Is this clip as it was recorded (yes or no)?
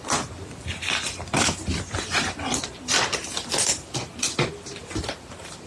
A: yes